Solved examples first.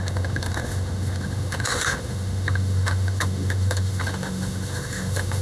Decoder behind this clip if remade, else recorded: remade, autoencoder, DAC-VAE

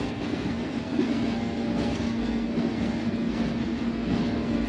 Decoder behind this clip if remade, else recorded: remade, codec, SNAC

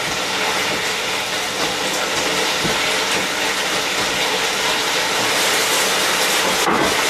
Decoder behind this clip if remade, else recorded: recorded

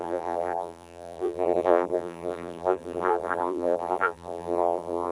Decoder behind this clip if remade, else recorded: remade, vocoder, BigVGAN v2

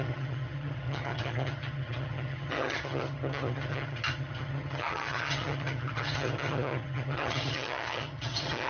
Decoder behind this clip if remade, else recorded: remade, vocoder, HiFi-GAN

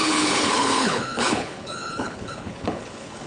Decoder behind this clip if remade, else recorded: remade, codec, HILCodec